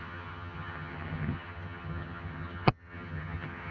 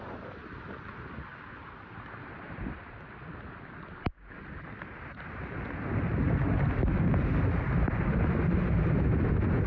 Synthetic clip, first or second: first